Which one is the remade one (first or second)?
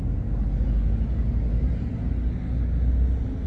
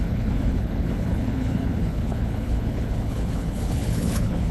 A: second